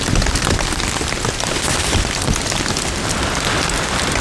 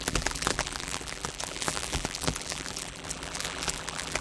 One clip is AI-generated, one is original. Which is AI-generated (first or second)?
second